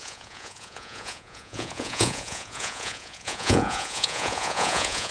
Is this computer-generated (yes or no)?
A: yes